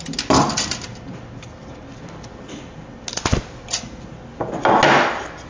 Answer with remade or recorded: recorded